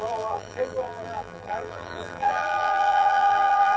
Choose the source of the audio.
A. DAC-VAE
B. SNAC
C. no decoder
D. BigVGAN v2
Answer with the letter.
D